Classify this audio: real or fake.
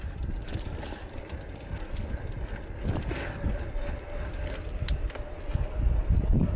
real